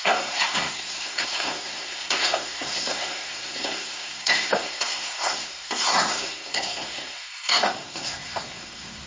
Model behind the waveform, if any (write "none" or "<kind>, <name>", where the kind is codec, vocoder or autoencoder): codec, SNAC